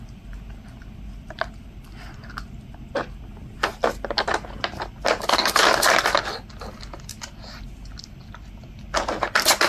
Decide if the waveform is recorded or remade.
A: recorded